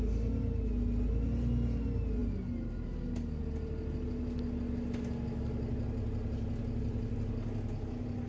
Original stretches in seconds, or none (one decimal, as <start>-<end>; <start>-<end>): 0.0-8.3